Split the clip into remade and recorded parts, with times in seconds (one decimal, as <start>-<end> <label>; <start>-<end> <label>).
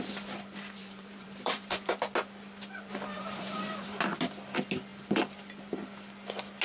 0.0-0.8 recorded; 0.8-2.0 remade; 2.0-2.9 recorded; 2.9-4.0 remade; 4.0-6.6 recorded